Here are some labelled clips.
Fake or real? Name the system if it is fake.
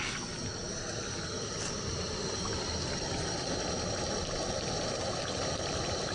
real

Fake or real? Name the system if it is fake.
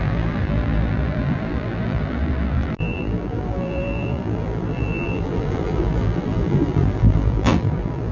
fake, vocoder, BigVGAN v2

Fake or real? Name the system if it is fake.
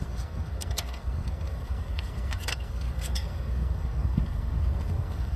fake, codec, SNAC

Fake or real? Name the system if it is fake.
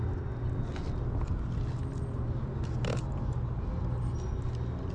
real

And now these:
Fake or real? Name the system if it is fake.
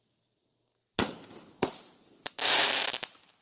real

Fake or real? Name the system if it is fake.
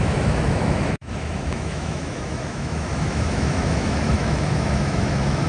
fake, autoencoder, DAC-VAE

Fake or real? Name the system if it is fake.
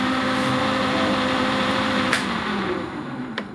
fake, vocoder, BigVGAN v2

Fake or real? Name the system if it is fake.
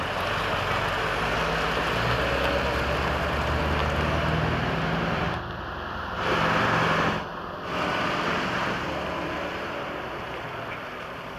real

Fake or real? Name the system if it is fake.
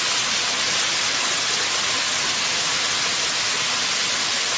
real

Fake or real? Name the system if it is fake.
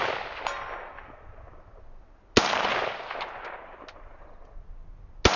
real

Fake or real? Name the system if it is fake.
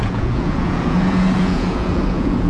fake, vocoder, Vocos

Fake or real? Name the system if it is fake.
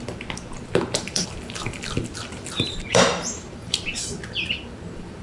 fake, vocoder, BigVGAN v2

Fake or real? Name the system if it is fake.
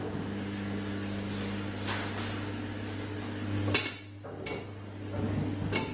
real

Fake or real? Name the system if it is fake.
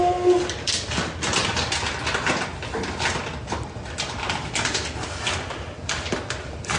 real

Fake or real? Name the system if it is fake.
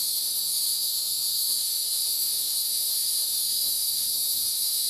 fake, autoencoder, DAC-VAE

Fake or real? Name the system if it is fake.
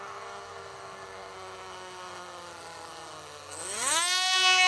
fake, codec, SNAC